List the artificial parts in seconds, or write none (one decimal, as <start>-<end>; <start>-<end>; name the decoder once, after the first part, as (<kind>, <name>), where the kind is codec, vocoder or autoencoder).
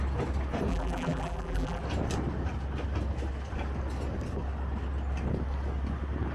0.7-1.8 (vocoder, BigVGAN v2)